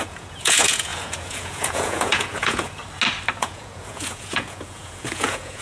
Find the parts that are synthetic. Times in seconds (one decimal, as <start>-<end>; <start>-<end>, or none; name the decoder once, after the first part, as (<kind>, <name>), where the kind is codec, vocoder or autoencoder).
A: 0.0-2.8 (vocoder, Vocos); 3.4-5.6